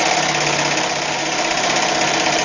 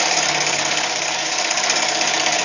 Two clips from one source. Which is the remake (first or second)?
second